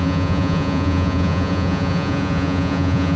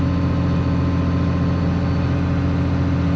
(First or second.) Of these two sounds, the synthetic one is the first